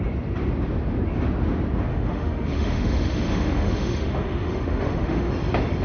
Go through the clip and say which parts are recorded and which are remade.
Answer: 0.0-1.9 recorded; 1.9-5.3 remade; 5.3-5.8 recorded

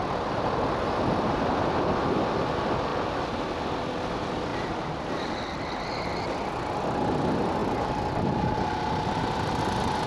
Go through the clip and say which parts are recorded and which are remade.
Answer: 0.0-10.1 recorded

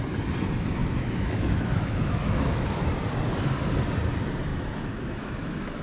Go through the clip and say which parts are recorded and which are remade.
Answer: 0.0-0.8 recorded; 0.8-2.8 remade; 2.8-4.5 recorded; 4.5-5.8 remade

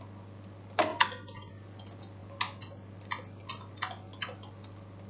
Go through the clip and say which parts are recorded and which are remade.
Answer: 0.0-5.1 recorded